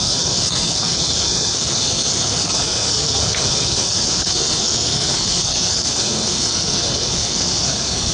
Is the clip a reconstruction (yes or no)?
yes